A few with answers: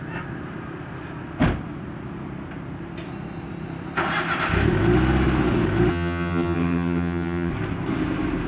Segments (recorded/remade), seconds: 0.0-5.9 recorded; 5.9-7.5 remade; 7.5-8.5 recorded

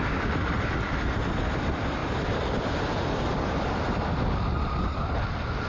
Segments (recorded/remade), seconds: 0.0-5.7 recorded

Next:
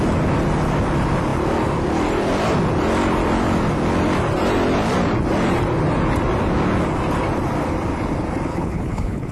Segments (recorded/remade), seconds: 0.0-8.5 recorded; 8.5-9.3 remade

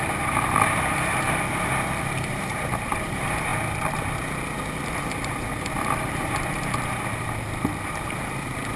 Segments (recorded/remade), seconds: 0.0-3.5 remade; 3.5-5.0 recorded; 5.0-8.8 remade

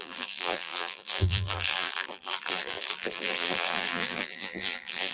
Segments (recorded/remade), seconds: 0.0-5.1 remade